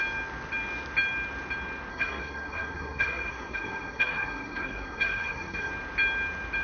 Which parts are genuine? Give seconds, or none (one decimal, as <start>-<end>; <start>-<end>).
0.0-1.9; 5.7-6.6